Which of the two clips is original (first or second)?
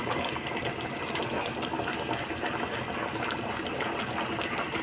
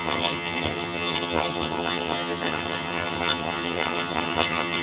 first